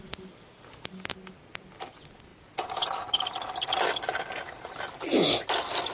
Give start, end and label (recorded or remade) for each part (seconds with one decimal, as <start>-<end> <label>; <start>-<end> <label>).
0.0-5.9 recorded